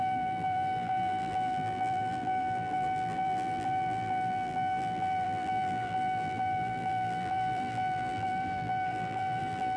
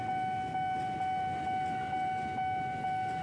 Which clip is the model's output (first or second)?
first